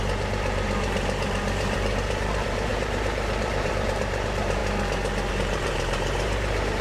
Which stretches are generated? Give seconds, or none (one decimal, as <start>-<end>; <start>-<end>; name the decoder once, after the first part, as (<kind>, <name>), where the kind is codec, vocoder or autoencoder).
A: 0.0-4.6 (vocoder, BigVGAN v2); 5.3-6.8